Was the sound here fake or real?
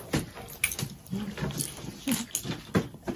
real